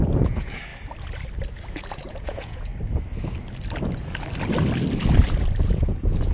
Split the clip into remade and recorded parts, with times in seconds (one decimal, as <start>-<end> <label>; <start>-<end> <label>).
0.0-0.7 remade; 0.7-1.7 recorded; 1.7-2.7 remade; 2.7-5.6 recorded; 5.6-6.3 remade